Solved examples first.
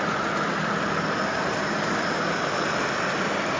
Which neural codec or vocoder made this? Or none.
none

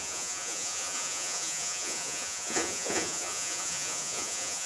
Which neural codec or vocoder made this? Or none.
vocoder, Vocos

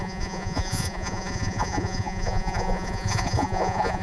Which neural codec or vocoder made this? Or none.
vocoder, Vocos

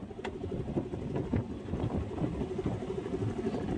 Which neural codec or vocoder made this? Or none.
none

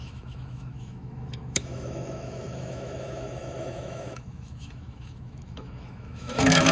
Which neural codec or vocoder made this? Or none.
autoencoder, DAC-VAE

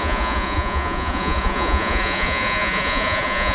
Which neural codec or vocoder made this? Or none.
vocoder, Vocos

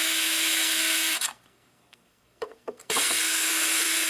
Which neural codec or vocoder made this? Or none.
codec, SNAC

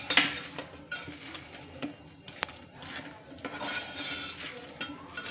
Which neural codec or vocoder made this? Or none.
none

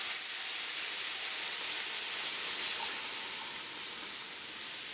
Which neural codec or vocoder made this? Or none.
none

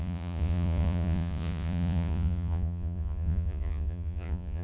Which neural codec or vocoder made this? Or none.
vocoder, Vocos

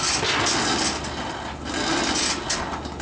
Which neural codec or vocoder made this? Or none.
none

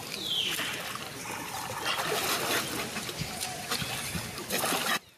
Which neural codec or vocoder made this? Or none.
none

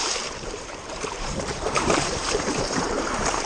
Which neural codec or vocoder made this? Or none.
vocoder, BigVGAN v2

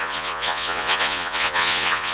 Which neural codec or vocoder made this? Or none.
vocoder, Vocos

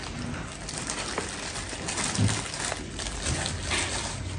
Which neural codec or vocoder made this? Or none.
none